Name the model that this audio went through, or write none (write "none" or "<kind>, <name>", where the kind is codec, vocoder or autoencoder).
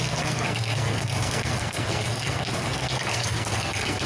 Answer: codec, SNAC